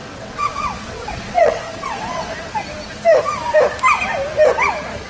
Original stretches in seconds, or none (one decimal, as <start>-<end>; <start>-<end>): 2.5-5.1